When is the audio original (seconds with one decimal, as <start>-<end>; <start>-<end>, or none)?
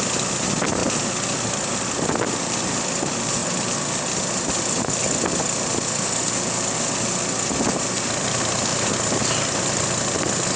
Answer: 0.0-0.8; 1.8-8.7; 9.8-10.6